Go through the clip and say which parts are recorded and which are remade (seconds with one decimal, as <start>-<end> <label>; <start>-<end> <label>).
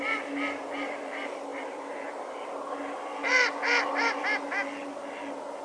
0.0-5.6 recorded